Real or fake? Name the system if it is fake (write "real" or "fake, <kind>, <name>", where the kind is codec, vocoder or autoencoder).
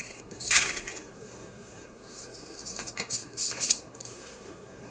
fake, codec, SNAC